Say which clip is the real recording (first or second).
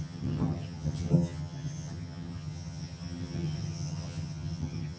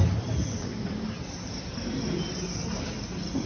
second